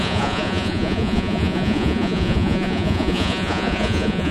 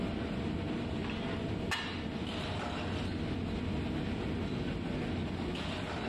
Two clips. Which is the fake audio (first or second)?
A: first